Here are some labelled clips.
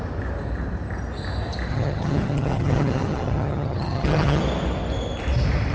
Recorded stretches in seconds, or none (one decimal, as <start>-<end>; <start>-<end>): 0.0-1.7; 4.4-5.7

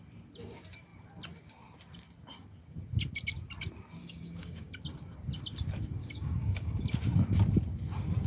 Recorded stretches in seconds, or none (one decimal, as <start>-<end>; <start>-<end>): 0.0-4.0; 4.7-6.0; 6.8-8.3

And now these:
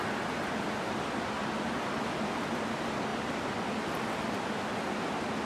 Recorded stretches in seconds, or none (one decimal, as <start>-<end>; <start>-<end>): 0.0-5.5

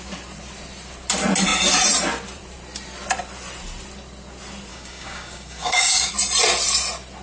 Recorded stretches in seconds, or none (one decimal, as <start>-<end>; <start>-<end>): 0.0-4.7; 6.1-7.2